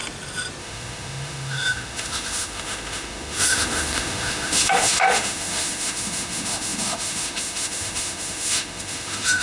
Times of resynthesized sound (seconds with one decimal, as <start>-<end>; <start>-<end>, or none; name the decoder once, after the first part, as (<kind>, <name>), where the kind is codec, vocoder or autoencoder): 0.6-9.4 (autoencoder, DAC-VAE)